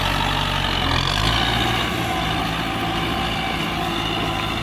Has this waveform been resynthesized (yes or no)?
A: no